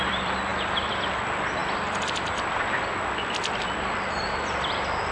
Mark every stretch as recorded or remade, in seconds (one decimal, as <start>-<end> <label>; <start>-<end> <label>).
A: 0.0-5.1 remade